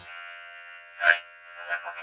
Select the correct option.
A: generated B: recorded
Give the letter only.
A